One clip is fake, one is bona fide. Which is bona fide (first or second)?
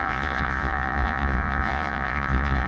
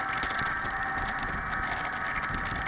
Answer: second